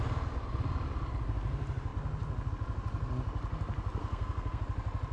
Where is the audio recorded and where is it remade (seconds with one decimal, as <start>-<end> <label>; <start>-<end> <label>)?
0.0-4.0 recorded; 4.0-4.6 remade; 4.6-5.1 recorded